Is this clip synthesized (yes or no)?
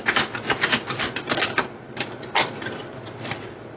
no